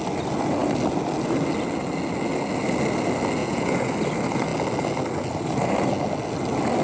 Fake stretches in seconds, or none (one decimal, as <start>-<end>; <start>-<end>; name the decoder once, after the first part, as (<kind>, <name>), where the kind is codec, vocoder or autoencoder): 3.4-3.9 (vocoder, Vocos)